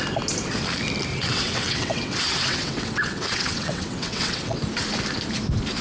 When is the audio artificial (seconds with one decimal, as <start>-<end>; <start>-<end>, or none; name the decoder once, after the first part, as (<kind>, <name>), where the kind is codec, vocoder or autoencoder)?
1.1-4.6 (vocoder, WaveNeXt)